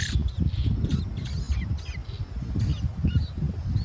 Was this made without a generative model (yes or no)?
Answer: yes